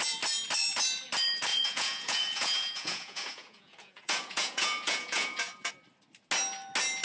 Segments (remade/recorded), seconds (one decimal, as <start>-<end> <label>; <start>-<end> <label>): 0.0-1.5 recorded; 1.5-5.7 remade; 5.7-7.0 recorded

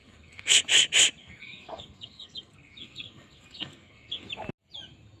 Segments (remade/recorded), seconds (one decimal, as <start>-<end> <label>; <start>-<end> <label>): 0.0-0.6 remade; 0.6-1.2 recorded; 1.2-4.3 remade; 4.3-5.2 recorded

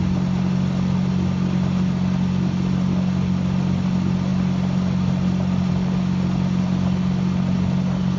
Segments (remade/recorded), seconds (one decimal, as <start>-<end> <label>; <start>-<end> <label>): 0.0-8.2 recorded

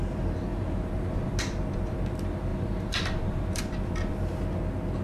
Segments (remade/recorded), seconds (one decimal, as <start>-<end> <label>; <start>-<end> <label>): 0.0-0.5 recorded; 0.5-1.4 remade; 1.4-2.5 recorded; 2.5-3.6 remade; 3.6-5.0 recorded

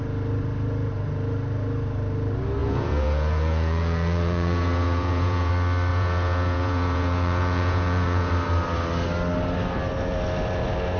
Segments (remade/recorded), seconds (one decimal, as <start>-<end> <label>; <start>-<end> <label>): 0.0-2.6 recorded; 2.6-5.5 remade; 5.5-5.9 recorded; 5.9-8.3 remade; 8.3-11.0 recorded

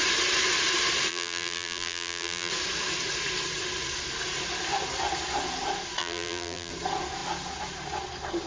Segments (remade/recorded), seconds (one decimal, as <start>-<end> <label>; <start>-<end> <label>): 0.0-1.1 recorded; 1.1-2.5 remade; 2.5-6.0 recorded; 6.0-6.7 remade; 6.7-8.5 recorded

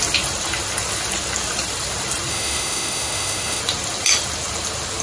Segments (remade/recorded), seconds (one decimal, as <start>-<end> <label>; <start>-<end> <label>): 0.0-2.3 recorded; 2.3-3.6 remade; 3.6-5.0 recorded

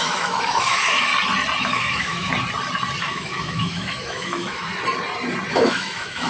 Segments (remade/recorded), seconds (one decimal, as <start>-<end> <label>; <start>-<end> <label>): 0.0-1.1 remade; 1.1-1.6 recorded; 1.6-2.3 remade; 2.3-3.0 recorded; 3.0-4.7 remade; 4.7-5.5 recorded; 5.5-6.3 remade